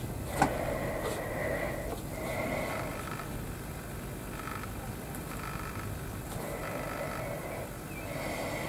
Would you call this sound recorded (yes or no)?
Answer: yes